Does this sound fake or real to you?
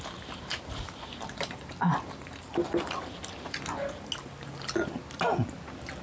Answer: real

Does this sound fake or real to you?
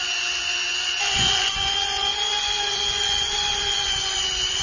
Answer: fake